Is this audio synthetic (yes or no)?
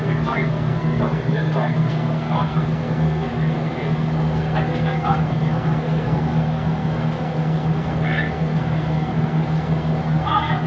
yes